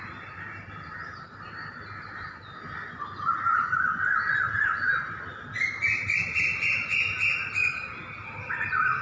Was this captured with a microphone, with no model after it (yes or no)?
yes